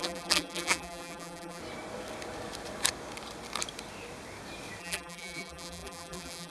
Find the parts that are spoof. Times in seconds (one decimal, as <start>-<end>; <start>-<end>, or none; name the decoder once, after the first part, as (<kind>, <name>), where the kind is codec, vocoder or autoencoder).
0.0-1.6 (vocoder, BigVGAN v2); 4.8-6.5